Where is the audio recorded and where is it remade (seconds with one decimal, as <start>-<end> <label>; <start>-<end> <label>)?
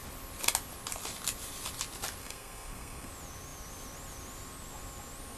0.0-2.2 recorded; 2.2-3.1 remade; 3.1-5.4 recorded